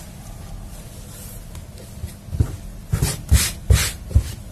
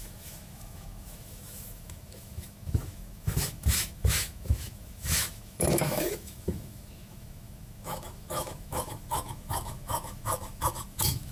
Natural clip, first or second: first